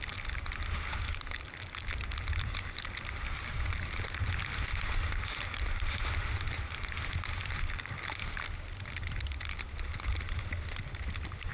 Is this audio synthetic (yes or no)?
no